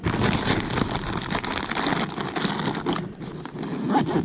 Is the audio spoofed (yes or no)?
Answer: no